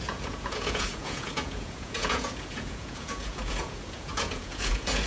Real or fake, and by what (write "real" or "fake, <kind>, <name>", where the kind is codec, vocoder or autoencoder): fake, vocoder, Vocos